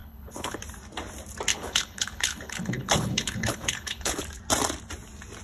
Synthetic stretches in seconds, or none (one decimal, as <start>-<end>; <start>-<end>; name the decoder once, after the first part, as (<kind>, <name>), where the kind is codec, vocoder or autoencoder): 0.0-0.6 (codec, HILCodec); 1.5-4.2